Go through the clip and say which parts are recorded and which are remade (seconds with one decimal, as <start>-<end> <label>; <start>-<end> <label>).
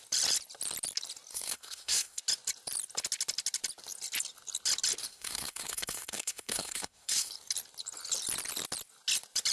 0.0-1.3 recorded; 1.3-2.2 remade; 2.2-5.1 recorded; 5.1-7.3 remade; 7.3-9.5 recorded